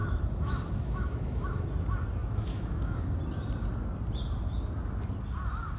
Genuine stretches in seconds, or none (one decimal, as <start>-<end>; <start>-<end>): 1.6-2.2; 3.1-5.8